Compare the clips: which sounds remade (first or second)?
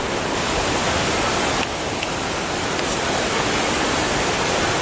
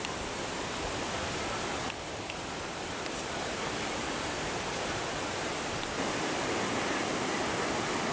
second